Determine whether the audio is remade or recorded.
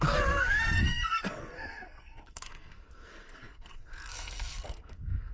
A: remade